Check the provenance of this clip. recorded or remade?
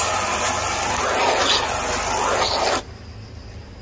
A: recorded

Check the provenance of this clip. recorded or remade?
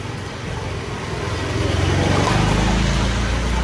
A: recorded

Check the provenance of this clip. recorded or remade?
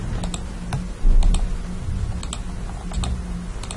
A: recorded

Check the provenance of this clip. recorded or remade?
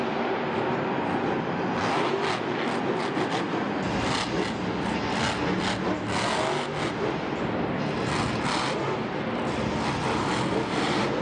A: recorded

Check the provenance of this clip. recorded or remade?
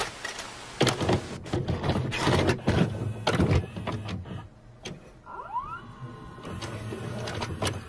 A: recorded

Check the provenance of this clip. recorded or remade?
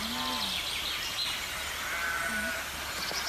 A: recorded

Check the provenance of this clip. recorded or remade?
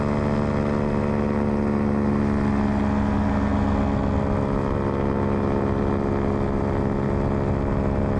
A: recorded